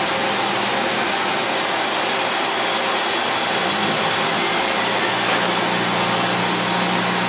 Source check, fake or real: real